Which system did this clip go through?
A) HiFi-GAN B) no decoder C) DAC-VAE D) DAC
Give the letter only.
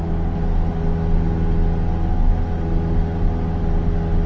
B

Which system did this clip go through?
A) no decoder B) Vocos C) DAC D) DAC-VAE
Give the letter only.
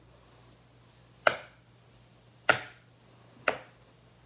A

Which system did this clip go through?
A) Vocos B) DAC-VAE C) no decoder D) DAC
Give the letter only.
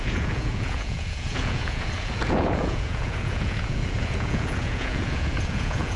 A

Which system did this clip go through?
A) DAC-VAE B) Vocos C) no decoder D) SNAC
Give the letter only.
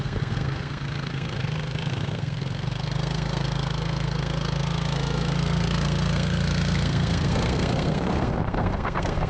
D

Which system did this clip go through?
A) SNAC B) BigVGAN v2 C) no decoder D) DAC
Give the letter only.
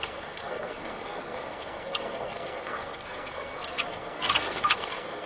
A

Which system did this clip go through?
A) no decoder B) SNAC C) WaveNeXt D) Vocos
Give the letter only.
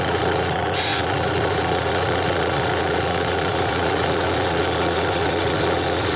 D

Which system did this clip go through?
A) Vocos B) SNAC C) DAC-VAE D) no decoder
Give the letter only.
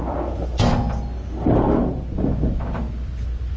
D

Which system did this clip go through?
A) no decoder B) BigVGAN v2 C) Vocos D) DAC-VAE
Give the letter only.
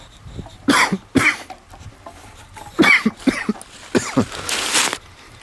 A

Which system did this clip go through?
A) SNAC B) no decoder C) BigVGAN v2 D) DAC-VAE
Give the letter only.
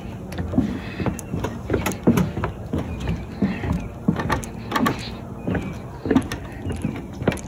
B